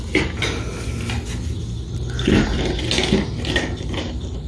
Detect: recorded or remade recorded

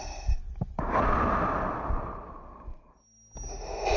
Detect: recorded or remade recorded